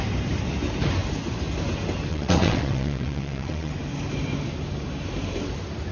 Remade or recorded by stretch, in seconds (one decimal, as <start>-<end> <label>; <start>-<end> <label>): 0.0-2.1 recorded; 2.1-3.7 remade; 3.7-5.9 recorded